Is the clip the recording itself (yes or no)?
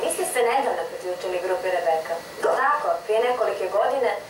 yes